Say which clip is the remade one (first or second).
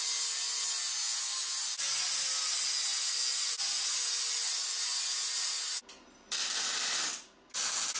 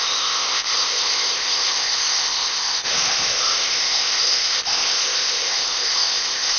second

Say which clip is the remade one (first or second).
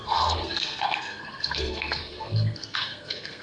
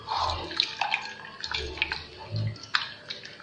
first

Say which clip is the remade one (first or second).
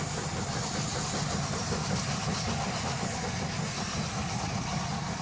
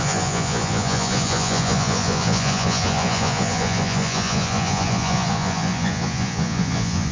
second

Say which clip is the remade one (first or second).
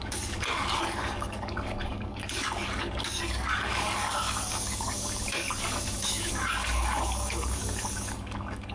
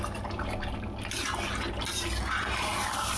first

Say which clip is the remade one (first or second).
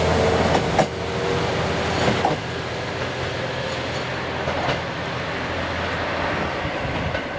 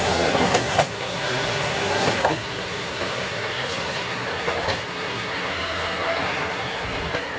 second